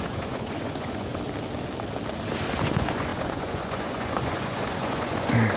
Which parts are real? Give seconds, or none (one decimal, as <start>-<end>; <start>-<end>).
1.1-2.6